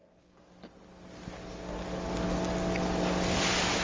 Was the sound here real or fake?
real